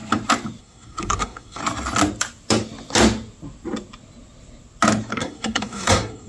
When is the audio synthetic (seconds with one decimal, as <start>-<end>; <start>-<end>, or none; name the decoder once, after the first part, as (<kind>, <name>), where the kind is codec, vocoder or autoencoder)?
0.6-1.6 (codec, SNAC); 5.1-6.3